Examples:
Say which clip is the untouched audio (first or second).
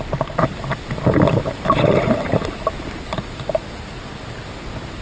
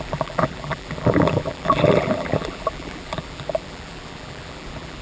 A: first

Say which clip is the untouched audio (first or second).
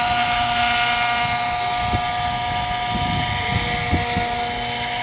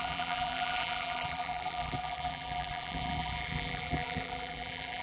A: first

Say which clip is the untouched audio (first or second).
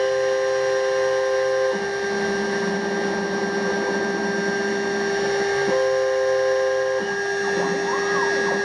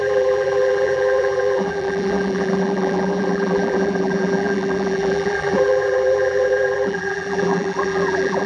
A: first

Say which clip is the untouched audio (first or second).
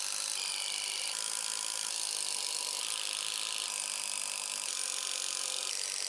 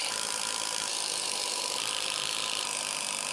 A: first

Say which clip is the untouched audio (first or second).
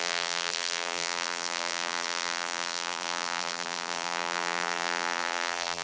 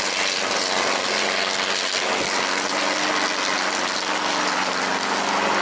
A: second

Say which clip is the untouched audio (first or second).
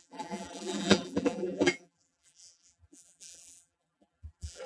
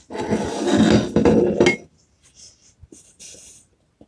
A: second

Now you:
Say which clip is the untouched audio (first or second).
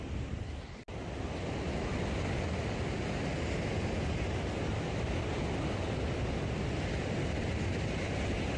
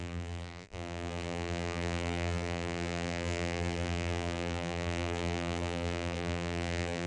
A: first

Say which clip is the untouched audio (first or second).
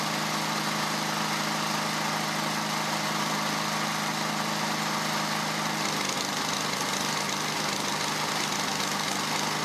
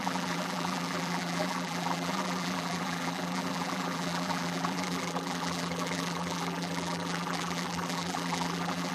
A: first